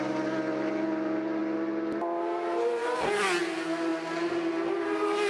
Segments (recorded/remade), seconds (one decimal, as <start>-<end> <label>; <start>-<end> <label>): 0.0-5.3 recorded